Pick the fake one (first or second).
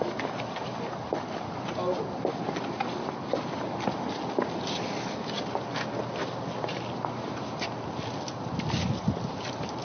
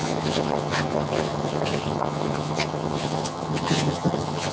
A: second